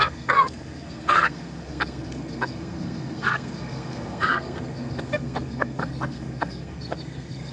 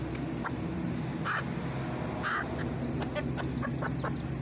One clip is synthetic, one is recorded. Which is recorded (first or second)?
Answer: second